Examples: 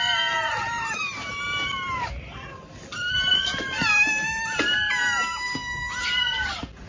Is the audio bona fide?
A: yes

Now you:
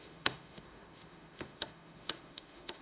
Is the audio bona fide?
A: no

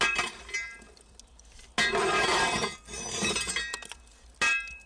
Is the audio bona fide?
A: yes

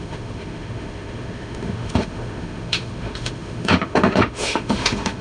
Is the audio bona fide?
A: no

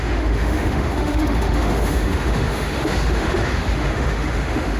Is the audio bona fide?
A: no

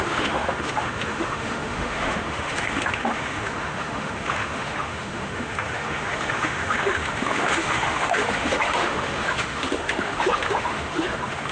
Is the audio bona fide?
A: no